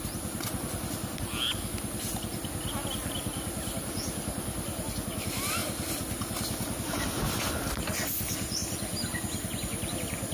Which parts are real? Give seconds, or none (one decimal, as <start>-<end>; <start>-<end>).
0.0-10.3